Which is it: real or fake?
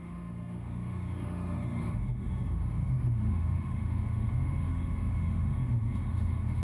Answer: fake